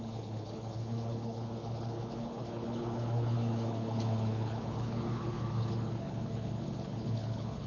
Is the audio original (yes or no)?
no